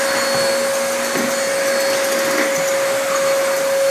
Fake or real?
real